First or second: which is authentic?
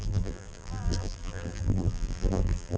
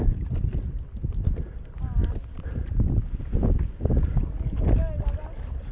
second